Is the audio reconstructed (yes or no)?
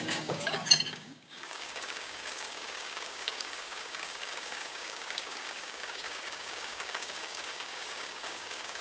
yes